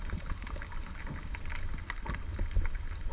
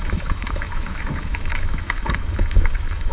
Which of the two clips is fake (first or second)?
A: second